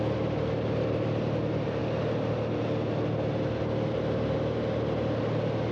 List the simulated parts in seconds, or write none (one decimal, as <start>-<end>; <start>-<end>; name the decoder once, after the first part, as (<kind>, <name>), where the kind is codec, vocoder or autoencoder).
none